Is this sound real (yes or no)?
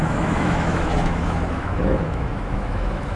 no